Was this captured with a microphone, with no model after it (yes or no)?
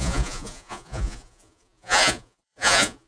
no